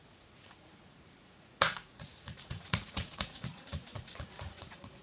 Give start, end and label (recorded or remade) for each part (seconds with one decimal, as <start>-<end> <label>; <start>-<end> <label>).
0.0-5.0 remade